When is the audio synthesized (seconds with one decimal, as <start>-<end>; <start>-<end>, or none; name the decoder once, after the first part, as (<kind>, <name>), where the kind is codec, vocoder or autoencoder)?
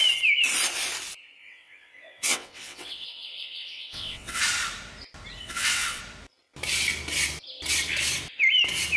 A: 1.4-4.4 (vocoder, WaveNeXt); 5.4-6.0